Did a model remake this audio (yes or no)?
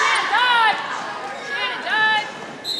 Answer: no